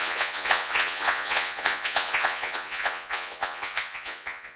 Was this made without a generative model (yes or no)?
no